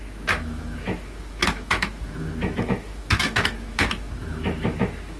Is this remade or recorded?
remade